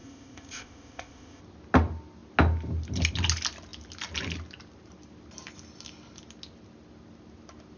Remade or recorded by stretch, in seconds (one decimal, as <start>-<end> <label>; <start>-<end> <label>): 0.0-1.4 remade; 1.4-7.8 recorded